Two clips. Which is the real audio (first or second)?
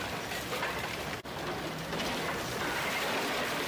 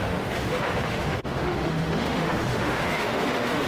first